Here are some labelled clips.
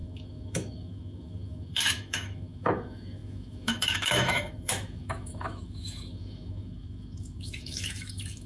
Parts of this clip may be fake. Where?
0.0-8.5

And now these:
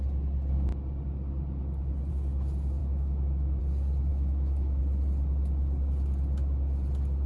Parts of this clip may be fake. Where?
2.8-3.6; 4.1-4.8

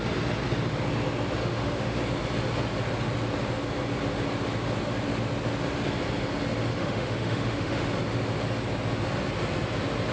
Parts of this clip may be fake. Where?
1.4-2.0; 6.7-7.9

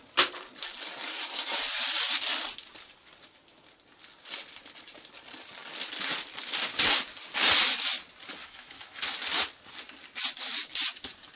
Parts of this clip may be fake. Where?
8.4-9.0

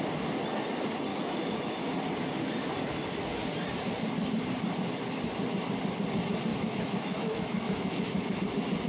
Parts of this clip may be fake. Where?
1.1-1.8; 6.5-8.4

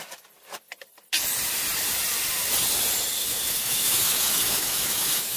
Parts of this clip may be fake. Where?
3.2-5.4

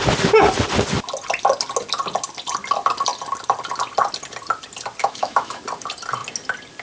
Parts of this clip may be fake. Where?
5.0-5.6

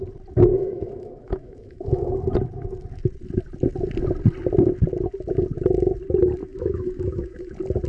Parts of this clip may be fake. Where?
0.5-2.1; 6.4-7.5